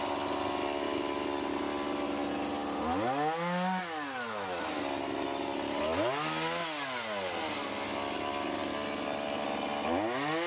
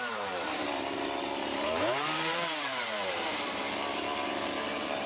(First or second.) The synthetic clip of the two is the second